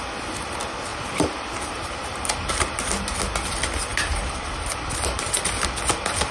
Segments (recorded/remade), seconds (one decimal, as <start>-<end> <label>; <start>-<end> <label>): 0.0-0.9 recorded; 0.9-2.5 remade; 2.5-3.9 recorded; 3.9-5.4 remade; 5.4-6.3 recorded